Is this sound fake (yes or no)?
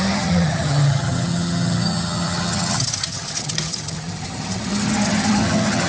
yes